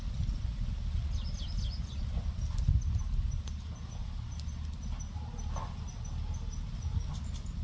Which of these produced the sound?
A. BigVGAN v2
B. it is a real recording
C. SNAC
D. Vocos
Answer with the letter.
B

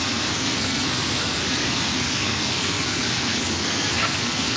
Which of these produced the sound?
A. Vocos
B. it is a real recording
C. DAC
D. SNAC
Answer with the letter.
D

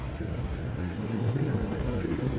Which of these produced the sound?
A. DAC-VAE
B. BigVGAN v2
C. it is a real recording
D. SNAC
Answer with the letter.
D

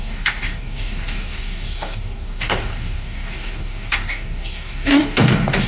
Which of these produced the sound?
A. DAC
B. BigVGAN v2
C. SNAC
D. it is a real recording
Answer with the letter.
A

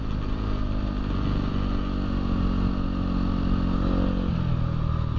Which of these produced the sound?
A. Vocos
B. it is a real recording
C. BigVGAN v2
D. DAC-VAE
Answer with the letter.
B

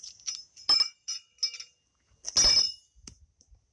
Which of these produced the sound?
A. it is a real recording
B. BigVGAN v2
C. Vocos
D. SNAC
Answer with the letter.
A